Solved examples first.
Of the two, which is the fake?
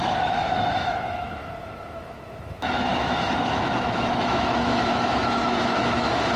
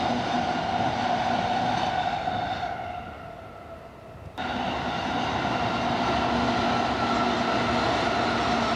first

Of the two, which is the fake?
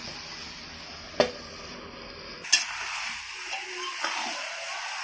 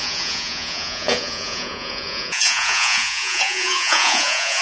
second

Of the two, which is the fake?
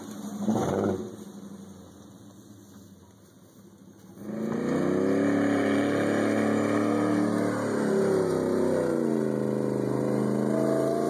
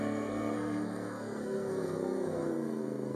second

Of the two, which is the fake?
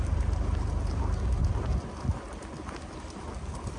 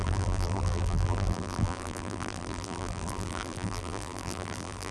second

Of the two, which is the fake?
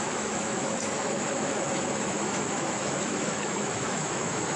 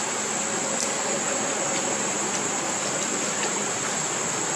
first